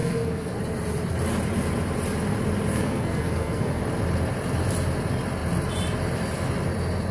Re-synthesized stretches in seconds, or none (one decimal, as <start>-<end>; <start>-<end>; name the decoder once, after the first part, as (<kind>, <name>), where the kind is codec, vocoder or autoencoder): 0.0-0.6 (codec, SNAC); 2.7-3.8